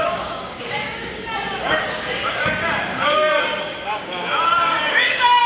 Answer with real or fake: fake